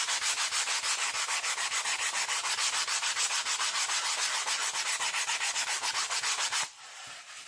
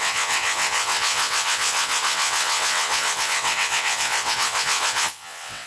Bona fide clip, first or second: first